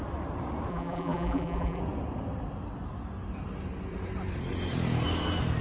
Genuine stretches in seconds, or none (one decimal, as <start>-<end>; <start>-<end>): 0.0-0.7; 1.8-5.6